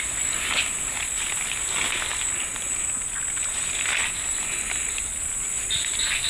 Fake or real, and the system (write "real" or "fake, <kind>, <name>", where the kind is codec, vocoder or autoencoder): real